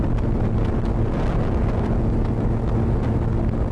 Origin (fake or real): real